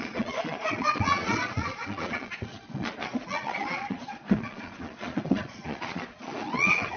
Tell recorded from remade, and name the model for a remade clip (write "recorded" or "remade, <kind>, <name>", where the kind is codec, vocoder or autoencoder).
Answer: remade, vocoder, Vocos